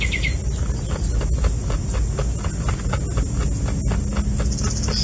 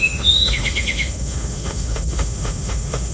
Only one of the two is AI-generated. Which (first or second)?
second